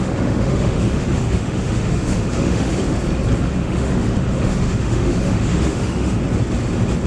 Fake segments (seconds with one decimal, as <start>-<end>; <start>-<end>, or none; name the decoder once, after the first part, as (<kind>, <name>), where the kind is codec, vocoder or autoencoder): 0.0-2.7 (autoencoder, DAC-VAE); 3.4-6.2